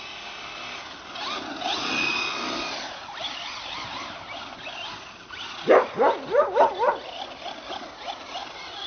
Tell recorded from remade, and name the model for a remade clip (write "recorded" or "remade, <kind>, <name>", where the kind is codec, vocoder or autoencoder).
recorded